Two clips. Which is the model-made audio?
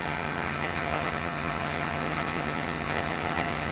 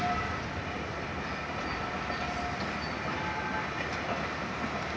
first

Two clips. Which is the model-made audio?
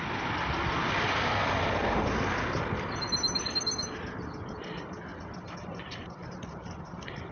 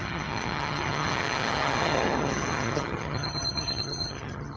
second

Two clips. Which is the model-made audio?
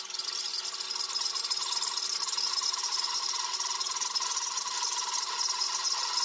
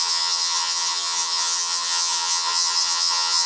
second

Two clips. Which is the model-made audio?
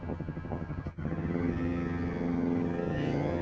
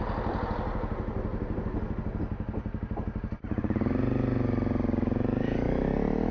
first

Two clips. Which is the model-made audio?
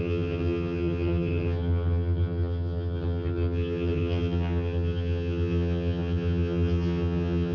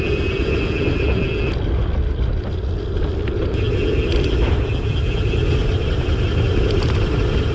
first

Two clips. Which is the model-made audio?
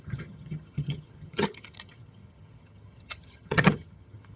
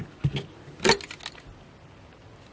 first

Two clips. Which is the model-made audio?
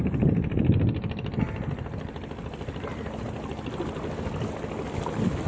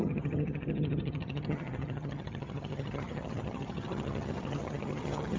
second